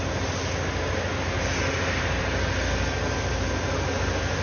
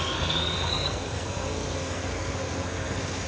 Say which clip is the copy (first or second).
second